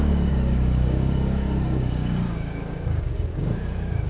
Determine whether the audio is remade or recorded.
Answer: remade